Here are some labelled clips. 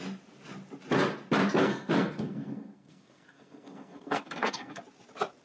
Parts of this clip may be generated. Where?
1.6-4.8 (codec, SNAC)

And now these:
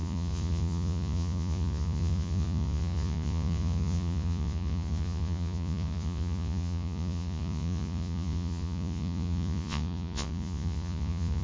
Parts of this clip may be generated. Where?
0.0-11.4 (vocoder, Vocos)

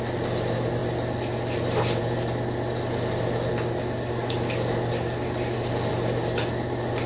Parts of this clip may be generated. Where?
3.5-5.9 (codec, DAC)

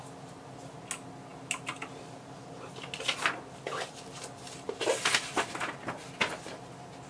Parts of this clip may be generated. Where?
none

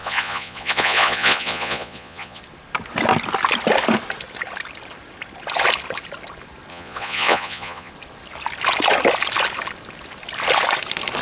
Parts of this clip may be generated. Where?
0.0-2.4 (vocoder, Vocos); 6.7-7.9

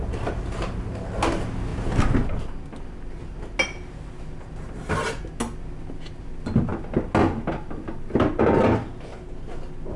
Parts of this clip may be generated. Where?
none

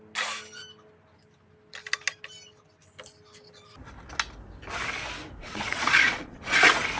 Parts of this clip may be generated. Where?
5.4-6.6 (vocoder, Vocos)